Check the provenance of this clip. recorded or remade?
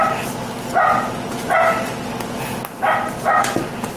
recorded